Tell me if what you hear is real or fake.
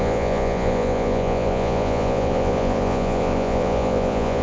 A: fake